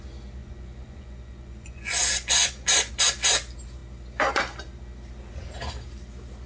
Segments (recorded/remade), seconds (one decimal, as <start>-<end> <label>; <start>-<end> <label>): 0.0-0.4 recorded; 0.4-2.9 remade; 2.9-6.5 recorded